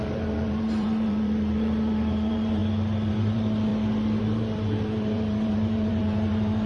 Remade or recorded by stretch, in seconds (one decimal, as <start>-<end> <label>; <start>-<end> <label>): 0.0-2.6 remade; 2.6-3.1 recorded; 3.1-3.7 remade; 3.7-4.2 recorded; 4.2-6.7 remade